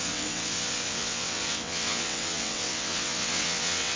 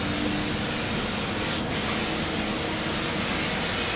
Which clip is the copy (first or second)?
first